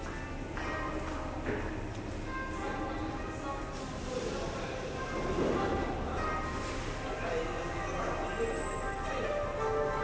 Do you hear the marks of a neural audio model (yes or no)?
no